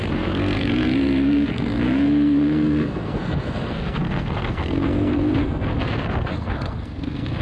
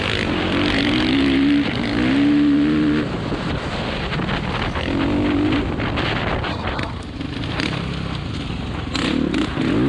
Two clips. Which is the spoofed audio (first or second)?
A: first